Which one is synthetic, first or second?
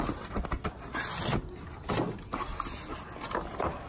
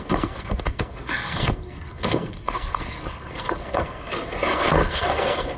second